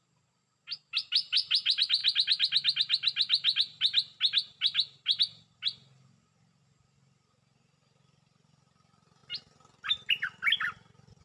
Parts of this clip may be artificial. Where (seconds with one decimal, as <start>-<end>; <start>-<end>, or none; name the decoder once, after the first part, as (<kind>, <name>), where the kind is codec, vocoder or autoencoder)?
none